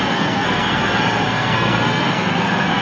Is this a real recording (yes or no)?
no